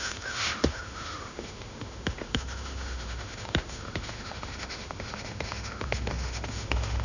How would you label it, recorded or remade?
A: remade